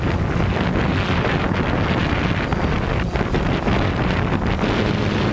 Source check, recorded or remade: recorded